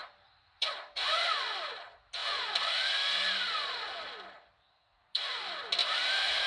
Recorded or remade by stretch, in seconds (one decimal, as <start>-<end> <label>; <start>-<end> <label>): 0.0-1.3 remade; 1.3-5.8 recorded; 5.8-6.5 remade